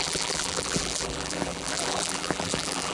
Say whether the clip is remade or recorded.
remade